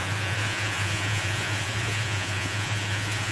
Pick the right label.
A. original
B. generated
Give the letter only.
B